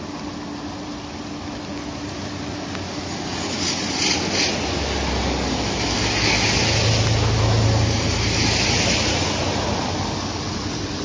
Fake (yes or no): no